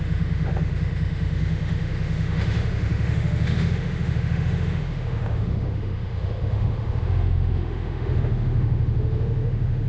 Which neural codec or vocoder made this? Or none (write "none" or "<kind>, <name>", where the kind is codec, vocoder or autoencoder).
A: autoencoder, DAC-VAE